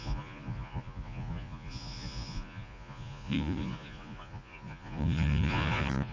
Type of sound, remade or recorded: remade